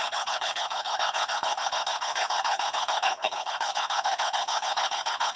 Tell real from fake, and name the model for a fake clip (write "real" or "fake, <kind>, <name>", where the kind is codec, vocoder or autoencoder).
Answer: fake, codec, HILCodec